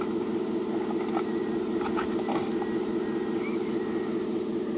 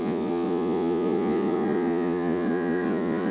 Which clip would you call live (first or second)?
first